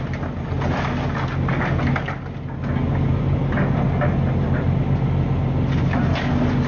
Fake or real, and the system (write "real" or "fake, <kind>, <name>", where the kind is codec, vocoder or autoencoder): real